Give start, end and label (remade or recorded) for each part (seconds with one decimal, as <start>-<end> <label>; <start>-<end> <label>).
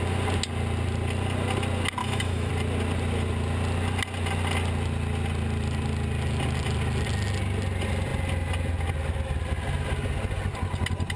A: 0.0-2.0 recorded; 2.0-2.5 remade; 2.5-11.2 recorded